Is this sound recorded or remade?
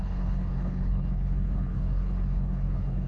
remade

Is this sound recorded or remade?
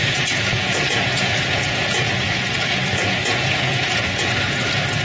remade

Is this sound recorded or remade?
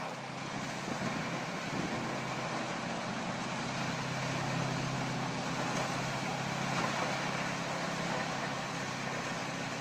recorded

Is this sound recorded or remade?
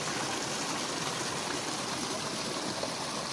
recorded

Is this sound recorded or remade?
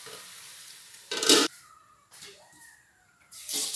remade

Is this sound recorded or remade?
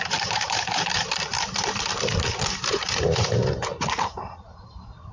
remade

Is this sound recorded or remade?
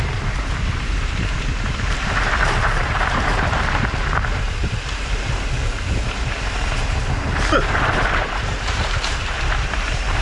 remade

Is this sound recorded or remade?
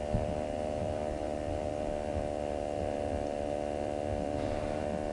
remade